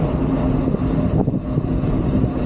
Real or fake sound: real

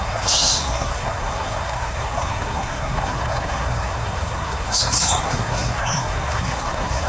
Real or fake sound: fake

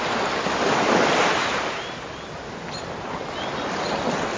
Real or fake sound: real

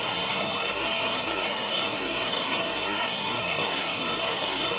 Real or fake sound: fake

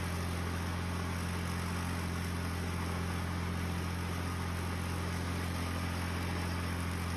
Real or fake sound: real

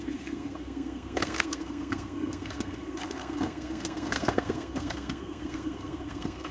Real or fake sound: fake